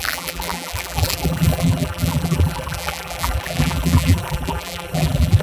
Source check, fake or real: fake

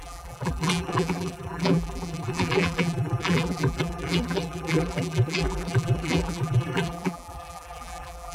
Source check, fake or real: fake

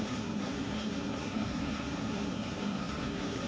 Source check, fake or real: fake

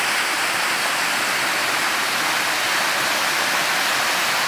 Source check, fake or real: real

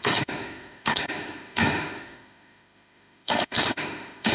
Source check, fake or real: fake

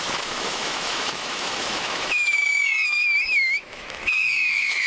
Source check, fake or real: fake